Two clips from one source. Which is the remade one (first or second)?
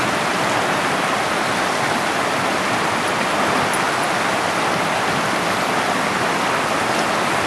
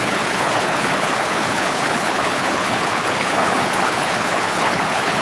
second